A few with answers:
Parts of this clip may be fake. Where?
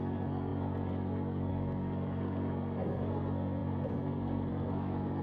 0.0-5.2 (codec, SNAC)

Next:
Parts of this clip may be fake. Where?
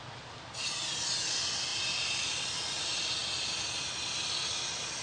none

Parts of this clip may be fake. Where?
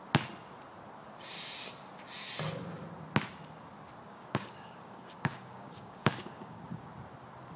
4.1-6.9 (codec, DAC)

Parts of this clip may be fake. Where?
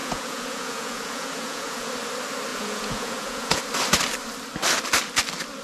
0.0-1.9 (vocoder, Vocos); 2.5-3.6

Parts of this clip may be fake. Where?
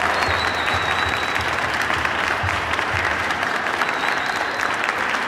0.5-3.7 (vocoder, BigVGAN v2)